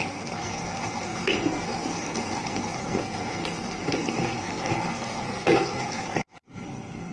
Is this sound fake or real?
fake